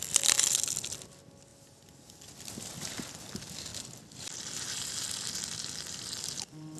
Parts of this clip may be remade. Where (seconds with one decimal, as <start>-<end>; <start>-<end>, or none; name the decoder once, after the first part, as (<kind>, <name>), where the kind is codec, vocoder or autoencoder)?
none